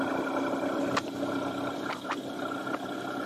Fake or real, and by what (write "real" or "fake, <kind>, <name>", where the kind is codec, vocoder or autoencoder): real